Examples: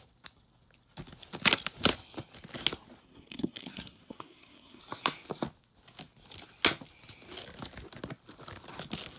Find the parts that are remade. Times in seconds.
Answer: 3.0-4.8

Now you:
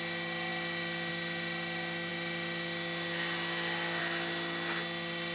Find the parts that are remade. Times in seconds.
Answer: none

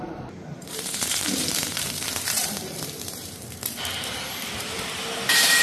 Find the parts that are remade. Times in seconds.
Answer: 0.0-5.6

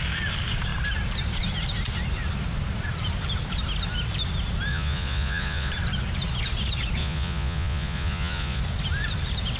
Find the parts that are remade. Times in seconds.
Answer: 4.7-5.7; 7.0-8.6

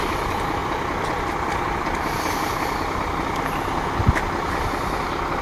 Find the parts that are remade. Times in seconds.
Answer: none

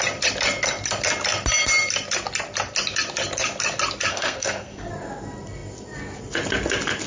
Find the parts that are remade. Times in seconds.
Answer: 4.1-4.9